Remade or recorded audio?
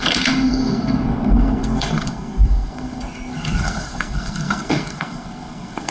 remade